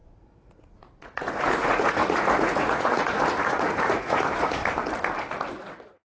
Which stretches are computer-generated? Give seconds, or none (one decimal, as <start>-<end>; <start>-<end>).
0.0-4.6; 5.5-6.2